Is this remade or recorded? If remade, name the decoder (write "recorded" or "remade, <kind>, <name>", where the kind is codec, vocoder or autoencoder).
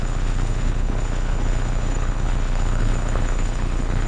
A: remade, codec, HILCodec